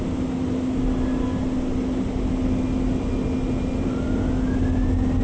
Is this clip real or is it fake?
real